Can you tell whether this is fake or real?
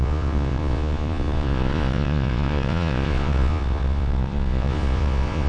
fake